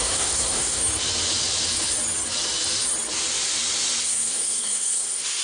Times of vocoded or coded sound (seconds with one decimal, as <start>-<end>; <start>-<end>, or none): 0.0-0.8; 4.0-5.4